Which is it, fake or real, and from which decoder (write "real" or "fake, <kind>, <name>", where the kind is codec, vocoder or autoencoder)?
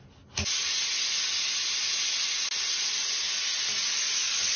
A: real